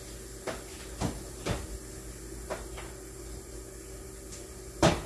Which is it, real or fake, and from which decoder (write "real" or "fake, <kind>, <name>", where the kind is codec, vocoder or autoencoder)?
real